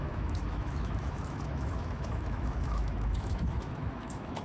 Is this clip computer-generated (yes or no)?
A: yes